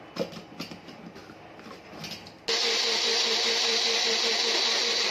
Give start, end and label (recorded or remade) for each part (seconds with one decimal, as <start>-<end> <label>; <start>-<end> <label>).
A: 0.0-5.1 recorded